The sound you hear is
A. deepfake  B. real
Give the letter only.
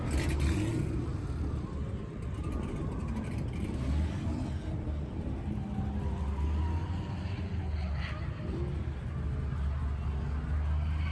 B